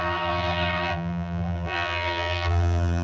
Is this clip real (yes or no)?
no